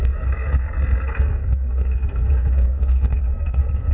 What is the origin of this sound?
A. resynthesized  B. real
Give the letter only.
A